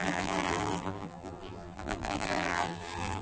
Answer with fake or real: fake